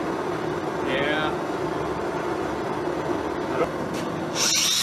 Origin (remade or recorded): recorded